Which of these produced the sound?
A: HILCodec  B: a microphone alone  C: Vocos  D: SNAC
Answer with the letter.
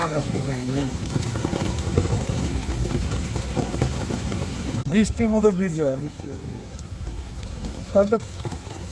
D